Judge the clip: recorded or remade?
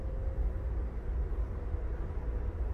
recorded